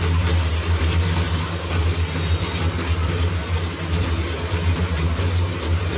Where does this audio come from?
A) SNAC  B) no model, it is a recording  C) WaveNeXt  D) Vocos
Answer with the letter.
B